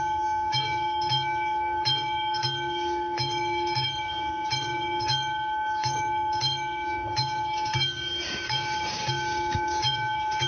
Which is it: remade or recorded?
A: remade